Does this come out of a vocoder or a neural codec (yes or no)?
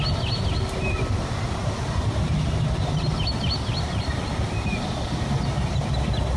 no